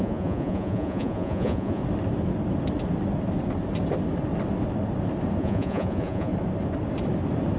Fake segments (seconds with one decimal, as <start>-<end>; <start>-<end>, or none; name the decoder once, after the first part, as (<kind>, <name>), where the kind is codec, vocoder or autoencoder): 0.0-1.8 (vocoder, Vocos); 5.4-6.3